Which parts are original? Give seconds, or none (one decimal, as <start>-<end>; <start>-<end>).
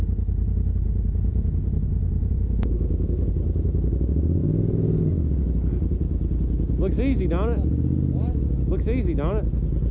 0.0-1.3; 3.3-4.4; 5.0-9.9